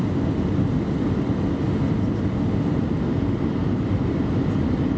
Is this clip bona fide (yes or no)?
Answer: yes